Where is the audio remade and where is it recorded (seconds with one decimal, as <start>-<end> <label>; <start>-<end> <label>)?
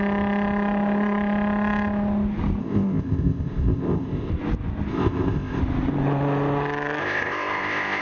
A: 0.0-2.6 recorded; 2.6-4.3 remade; 4.3-4.9 recorded; 4.9-5.6 remade; 5.6-7.0 recorded; 7.0-8.0 remade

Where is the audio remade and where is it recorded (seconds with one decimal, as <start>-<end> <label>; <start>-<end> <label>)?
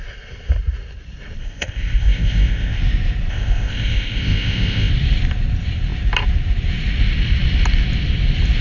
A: 0.0-1.4 recorded; 1.4-2.8 remade; 2.8-3.3 recorded; 3.3-4.9 remade; 4.9-8.6 recorded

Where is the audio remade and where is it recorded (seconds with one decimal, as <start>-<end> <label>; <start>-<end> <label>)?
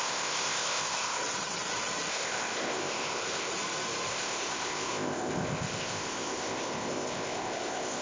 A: 0.0-1.2 remade; 1.2-2.1 recorded; 2.1-3.5 remade; 3.5-4.1 recorded; 4.1-8.0 remade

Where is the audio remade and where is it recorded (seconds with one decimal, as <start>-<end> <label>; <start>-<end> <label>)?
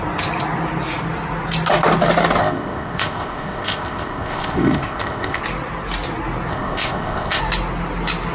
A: 0.0-2.4 recorded; 2.4-5.4 remade; 5.4-6.5 recorded; 6.5-7.4 remade; 7.4-8.3 recorded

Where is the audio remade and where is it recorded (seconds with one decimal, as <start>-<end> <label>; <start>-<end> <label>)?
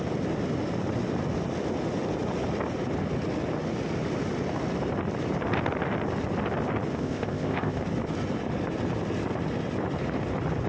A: 0.0-6.9 recorded; 6.9-7.8 remade; 7.8-10.7 recorded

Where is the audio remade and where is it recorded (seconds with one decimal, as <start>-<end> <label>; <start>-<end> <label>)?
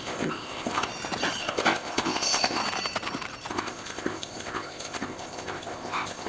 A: 0.0-0.9 remade; 0.9-1.4 recorded; 1.4-2.6 remade; 2.6-3.5 recorded; 3.5-6.3 remade